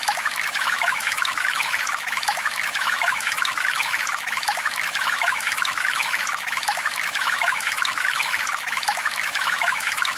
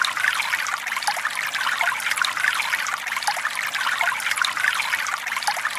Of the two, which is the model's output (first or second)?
first